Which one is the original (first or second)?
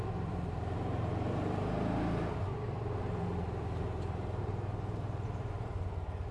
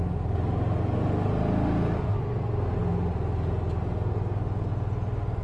second